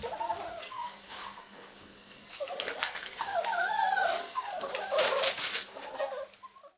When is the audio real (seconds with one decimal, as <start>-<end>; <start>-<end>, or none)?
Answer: 0.0-0.6; 3.4-4.2; 4.7-5.4; 6.1-6.8

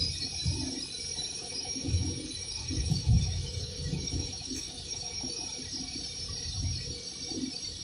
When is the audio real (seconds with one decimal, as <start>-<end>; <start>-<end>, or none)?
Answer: 0.0-1.2; 5.4-7.8

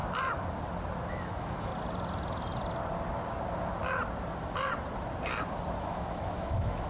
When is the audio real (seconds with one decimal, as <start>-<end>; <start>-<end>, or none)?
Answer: 0.0-1.1; 1.7-5.8

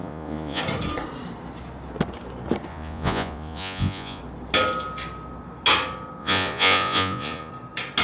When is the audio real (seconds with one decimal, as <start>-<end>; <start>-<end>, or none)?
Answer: 0.6-2.7; 4.2-6.2; 7.5-8.0

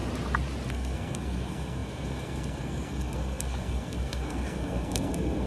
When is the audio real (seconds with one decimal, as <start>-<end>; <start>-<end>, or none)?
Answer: 0.0-0.7

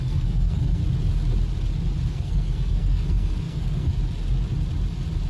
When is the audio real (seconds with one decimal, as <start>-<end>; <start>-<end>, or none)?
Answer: 0.8-2.1; 3.9-5.3

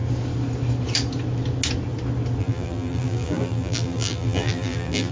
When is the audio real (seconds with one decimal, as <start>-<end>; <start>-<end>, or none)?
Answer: 0.0-2.4

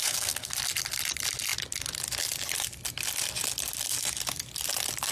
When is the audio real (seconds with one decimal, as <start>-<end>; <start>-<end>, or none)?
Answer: 0.5-5.1